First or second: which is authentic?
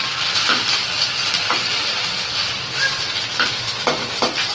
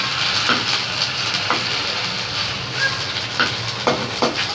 second